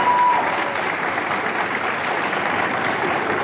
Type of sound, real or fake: real